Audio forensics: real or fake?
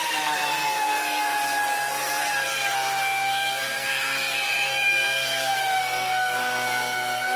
fake